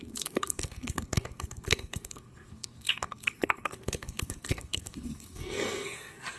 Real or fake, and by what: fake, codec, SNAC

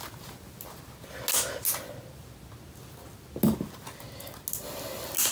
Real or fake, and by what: real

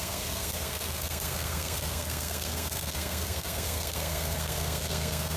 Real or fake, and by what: fake, codec, SNAC